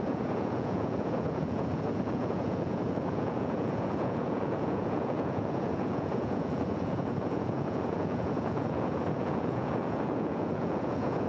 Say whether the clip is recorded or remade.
remade